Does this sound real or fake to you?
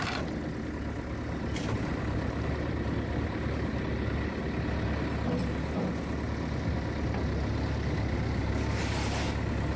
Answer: real